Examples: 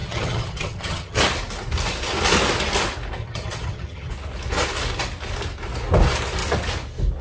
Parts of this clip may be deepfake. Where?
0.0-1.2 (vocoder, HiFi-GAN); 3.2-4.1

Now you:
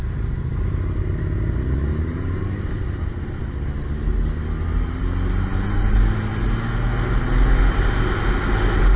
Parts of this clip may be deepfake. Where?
none

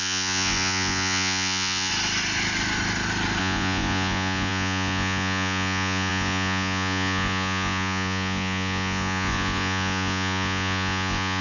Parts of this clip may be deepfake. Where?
0.0-1.9 (vocoder, Vocos); 3.4-11.4

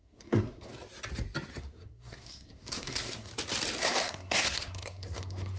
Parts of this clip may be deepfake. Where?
0.0-0.7 (codec, SNAC); 1.6-3.3; 3.8-5.6

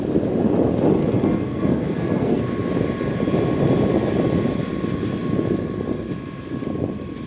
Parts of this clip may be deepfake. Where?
1.0-2.4 (codec, SNAC)

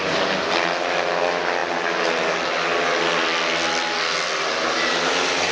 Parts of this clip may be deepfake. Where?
none